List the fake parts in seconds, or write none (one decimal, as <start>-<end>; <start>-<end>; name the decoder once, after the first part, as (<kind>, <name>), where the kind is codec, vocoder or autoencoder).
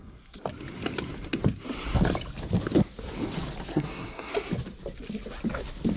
3.7-4.3 (codec, SNAC)